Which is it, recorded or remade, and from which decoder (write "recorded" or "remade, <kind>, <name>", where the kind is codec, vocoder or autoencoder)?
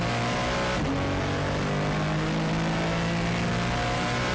recorded